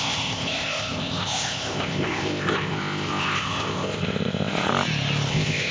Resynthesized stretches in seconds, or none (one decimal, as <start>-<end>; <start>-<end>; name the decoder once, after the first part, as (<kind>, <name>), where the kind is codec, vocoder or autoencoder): 0.0-4.7 (codec, ZipCodec); 5.3-5.7